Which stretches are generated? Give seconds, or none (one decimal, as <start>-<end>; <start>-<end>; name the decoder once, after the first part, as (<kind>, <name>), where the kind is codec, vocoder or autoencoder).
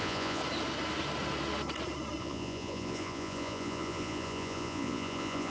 0.0-0.4 (vocoder, Vocos); 2.2-5.5